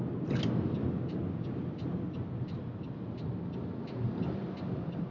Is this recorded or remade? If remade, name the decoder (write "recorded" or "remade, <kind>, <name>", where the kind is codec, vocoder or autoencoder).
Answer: recorded